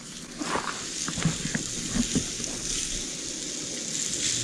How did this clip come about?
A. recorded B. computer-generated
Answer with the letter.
A